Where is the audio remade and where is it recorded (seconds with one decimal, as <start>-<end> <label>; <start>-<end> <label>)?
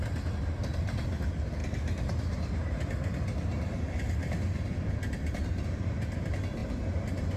0.0-7.4 recorded